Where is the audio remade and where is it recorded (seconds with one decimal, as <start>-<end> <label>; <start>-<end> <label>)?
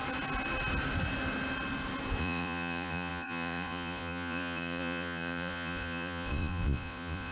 0.0-2.2 recorded; 2.2-7.3 remade